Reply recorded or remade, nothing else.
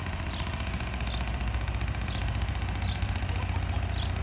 recorded